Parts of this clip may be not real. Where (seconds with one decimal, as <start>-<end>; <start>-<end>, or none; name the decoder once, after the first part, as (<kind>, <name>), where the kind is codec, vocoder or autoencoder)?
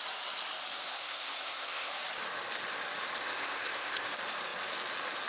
0.9-1.9 (codec, ZipCodec); 3.2-4.1